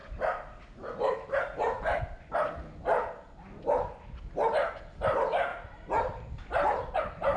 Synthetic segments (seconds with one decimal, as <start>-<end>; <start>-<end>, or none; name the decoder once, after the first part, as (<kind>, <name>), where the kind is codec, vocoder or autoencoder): 0.0-2.0 (vocoder, BigVGAN v2); 5.5-7.0